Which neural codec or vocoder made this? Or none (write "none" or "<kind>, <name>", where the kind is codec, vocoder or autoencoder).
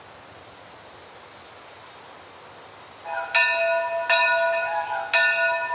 none